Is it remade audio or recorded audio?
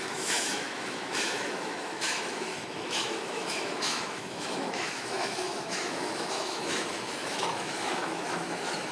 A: remade